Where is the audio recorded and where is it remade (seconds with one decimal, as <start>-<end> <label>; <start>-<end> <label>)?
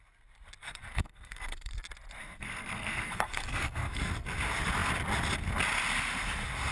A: 0.0-0.6 recorded; 0.6-1.7 remade; 1.7-2.2 recorded; 2.2-4.1 remade; 4.1-6.7 recorded